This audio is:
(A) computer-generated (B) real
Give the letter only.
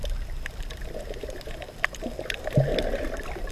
B